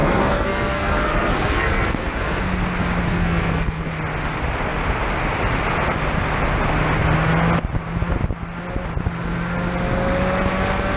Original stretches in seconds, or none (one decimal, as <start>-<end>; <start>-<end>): 2.4-3.1; 3.9-11.0